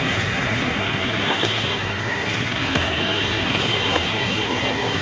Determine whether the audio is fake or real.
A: fake